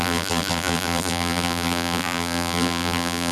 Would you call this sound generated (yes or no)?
yes